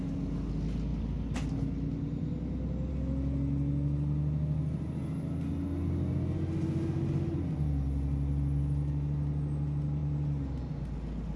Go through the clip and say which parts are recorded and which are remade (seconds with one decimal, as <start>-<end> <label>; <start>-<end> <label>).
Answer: 0.0-11.4 recorded